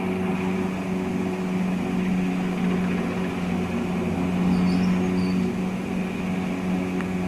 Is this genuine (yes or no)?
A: yes